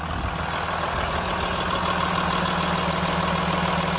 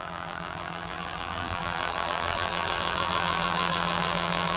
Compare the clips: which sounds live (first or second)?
first